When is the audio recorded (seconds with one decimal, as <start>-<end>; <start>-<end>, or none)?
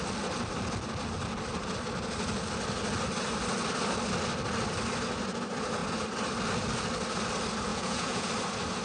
0.0-7.7; 8.3-8.8